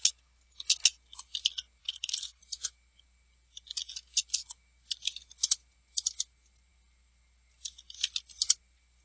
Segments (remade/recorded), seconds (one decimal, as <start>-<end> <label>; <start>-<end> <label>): 0.0-1.8 recorded; 1.8-2.4 remade; 2.4-9.0 recorded